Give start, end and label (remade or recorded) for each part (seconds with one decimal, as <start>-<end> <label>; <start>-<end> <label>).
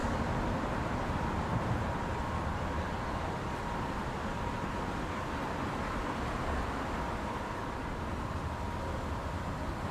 0.0-9.9 recorded